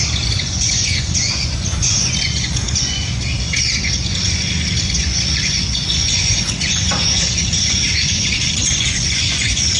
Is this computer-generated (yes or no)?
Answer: yes